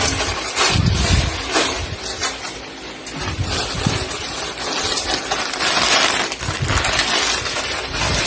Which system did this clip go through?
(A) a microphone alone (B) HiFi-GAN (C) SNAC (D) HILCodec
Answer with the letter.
A